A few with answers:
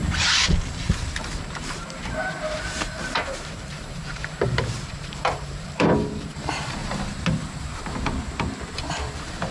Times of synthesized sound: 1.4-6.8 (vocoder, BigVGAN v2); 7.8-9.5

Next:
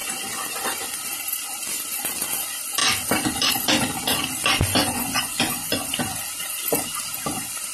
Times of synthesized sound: 4.8-5.9 (vocoder, Vocos)